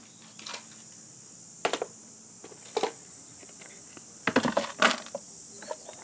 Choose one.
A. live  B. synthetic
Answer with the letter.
A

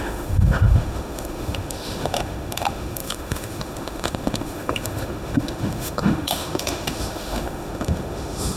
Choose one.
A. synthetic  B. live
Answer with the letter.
A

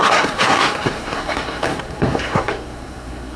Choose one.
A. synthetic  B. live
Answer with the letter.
A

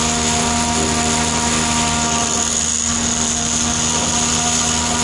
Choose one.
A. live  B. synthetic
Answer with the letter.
A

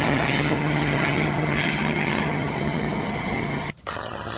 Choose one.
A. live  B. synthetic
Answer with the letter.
B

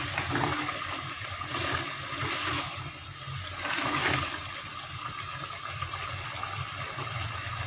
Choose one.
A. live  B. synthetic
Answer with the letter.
A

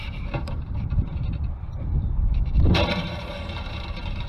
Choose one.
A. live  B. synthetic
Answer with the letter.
B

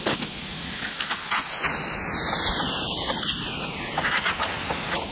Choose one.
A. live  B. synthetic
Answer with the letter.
A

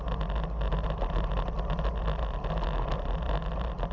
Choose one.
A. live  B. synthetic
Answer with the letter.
A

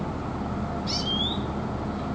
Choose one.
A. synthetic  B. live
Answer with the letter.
B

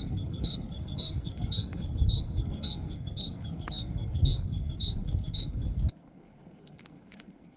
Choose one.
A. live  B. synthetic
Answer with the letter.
B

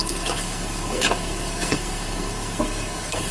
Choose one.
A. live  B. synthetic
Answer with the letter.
B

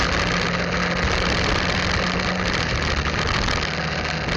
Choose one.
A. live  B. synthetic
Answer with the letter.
A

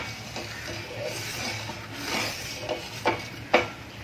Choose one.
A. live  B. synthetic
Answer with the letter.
A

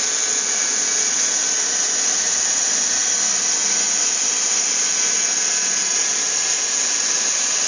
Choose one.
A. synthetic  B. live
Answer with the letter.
B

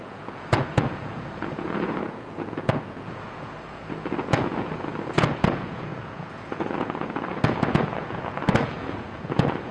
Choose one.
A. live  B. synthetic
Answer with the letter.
B